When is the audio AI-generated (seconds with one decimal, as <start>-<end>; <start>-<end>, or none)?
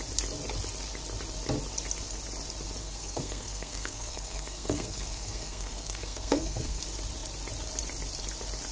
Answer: 2.8-6.8